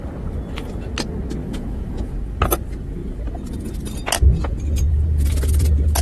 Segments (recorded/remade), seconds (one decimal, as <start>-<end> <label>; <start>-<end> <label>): 0.0-1.4 recorded; 1.4-2.1 remade; 2.1-6.0 recorded

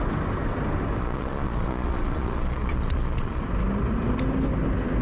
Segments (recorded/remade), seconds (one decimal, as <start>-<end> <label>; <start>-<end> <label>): 0.0-1.0 recorded; 1.0-3.4 remade; 3.4-5.0 recorded